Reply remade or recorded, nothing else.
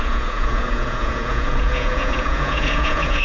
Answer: remade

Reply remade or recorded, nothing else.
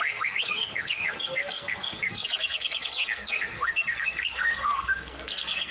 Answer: remade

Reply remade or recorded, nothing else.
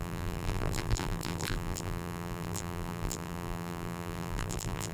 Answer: remade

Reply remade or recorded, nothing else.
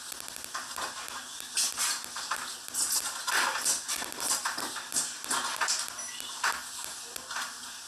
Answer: recorded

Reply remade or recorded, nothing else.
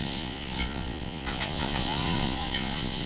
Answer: remade